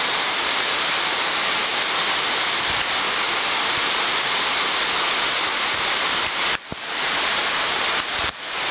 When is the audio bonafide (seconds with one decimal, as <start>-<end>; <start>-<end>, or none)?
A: 1.7-5.1